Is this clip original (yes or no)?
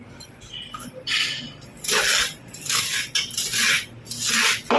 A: yes